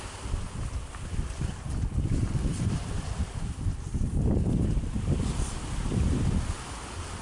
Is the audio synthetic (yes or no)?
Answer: yes